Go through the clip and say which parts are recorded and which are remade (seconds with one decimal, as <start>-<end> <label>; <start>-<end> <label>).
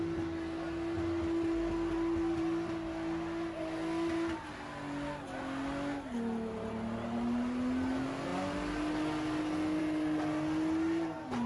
0.0-11.5 recorded